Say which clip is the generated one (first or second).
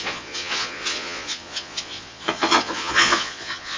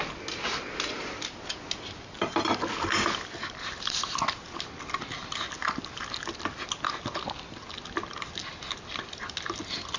first